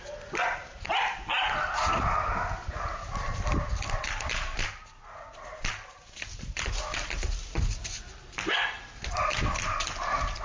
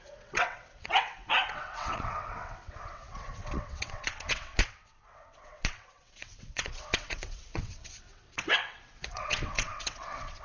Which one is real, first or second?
first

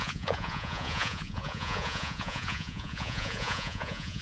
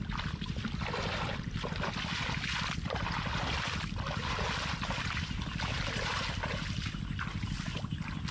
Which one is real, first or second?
second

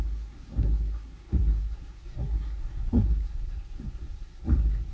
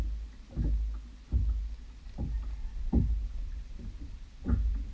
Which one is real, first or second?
second